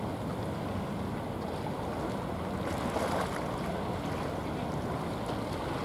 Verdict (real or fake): real